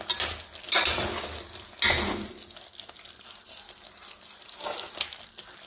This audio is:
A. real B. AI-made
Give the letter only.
A